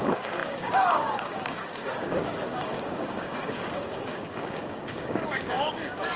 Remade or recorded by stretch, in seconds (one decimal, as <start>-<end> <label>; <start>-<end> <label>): 0.0-6.2 remade